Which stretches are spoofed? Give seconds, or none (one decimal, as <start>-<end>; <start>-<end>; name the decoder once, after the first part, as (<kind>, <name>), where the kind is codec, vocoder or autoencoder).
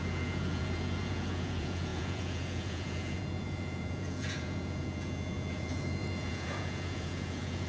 0.0-7.7 (vocoder, Vocos)